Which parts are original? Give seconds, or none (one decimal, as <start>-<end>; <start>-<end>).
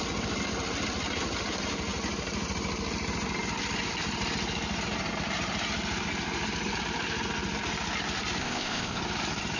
0.0-8.4; 9.0-9.6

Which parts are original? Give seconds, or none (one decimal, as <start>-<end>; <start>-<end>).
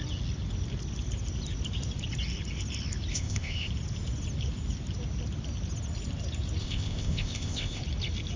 0.0-3.1; 3.7-6.6; 7.8-8.4